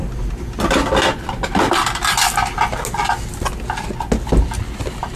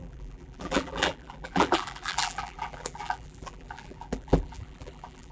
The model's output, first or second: second